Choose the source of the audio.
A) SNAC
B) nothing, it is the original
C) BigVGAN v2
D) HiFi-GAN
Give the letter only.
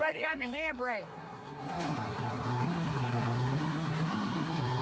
A